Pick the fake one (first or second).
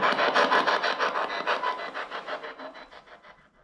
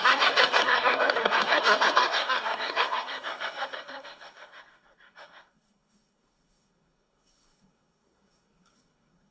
second